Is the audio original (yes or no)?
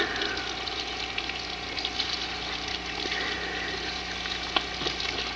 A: yes